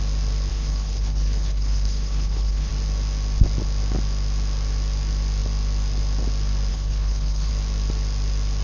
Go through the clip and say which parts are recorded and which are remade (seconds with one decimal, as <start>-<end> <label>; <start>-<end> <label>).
0.0-0.5 recorded; 0.5-2.7 remade; 2.7-6.7 recorded; 6.7-7.5 remade; 7.5-8.6 recorded